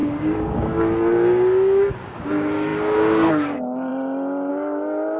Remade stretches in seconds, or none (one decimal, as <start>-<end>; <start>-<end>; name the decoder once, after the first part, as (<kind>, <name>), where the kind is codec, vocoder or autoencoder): 0.0-3.9 (codec, DAC); 4.5-5.2